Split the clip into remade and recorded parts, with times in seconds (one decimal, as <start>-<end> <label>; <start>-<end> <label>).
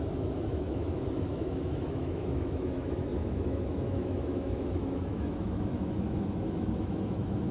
0.0-7.5 remade